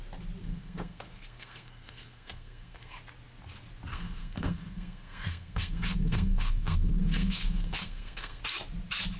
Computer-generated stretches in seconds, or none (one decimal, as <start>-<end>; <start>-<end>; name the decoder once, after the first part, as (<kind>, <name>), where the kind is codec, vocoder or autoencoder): 0.4-3.0 (codec, SNAC); 3.9-8.4

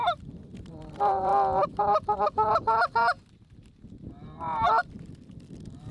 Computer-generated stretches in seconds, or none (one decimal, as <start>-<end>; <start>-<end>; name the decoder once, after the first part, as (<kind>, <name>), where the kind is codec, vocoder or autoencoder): 0.0-1.3 (vocoder, BigVGAN v2); 4.8-5.9

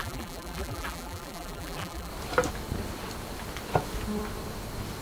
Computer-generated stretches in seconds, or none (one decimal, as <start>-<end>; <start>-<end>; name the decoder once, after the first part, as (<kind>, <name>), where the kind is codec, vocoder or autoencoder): 0.0-2.1 (vocoder, BigVGAN v2)

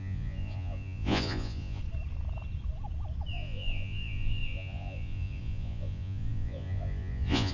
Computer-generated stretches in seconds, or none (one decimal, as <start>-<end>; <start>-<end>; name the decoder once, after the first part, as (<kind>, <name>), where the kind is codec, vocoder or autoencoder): 0.0-1.8 (vocoder, Vocos); 3.3-7.5

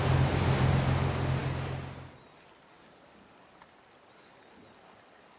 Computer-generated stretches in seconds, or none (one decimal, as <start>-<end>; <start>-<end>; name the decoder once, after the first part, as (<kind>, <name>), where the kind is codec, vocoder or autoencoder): none

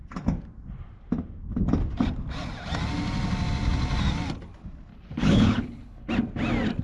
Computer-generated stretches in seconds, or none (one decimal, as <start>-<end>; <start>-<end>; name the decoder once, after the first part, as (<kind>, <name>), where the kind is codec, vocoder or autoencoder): 4.9-6.1 (codec, HILCodec)